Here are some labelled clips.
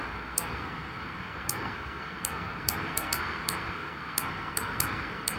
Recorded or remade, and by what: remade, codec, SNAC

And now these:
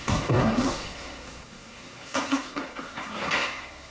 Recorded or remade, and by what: remade, codec, SNAC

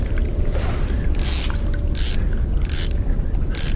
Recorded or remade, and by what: recorded